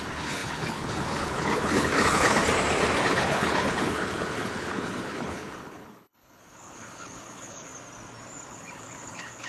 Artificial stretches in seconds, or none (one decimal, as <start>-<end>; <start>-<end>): 0.0-2.4; 3.1-7.7; 8.5-9.5